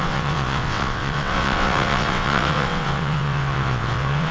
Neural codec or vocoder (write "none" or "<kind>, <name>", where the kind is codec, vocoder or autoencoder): vocoder, WaveNeXt